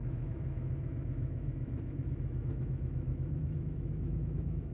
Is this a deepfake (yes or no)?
yes